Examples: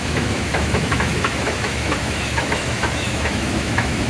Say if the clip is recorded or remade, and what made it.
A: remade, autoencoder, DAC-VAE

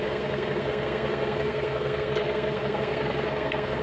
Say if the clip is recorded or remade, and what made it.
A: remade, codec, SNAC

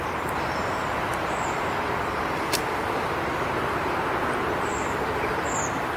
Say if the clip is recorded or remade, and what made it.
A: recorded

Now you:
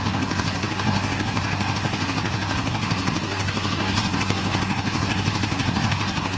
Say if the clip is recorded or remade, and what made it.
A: remade, codec, SNAC